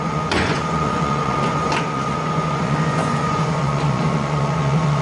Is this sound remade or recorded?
remade